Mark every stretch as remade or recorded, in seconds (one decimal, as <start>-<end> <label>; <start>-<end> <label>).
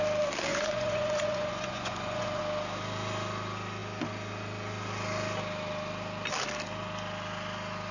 0.0-0.5 recorded; 0.5-2.4 remade; 2.4-7.9 recorded